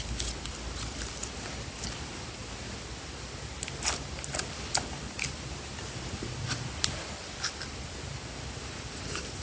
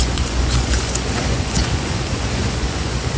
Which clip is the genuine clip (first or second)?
first